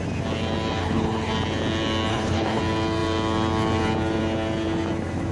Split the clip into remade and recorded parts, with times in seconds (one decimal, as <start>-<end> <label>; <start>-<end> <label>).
0.0-0.8 recorded; 0.8-1.3 remade; 1.3-2.1 recorded; 2.1-2.6 remade; 2.6-5.3 recorded